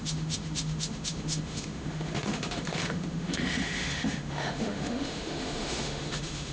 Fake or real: fake